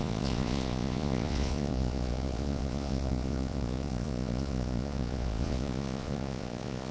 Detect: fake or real fake